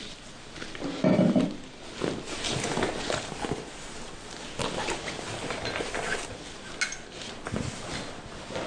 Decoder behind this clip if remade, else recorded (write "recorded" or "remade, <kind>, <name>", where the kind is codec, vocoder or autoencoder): recorded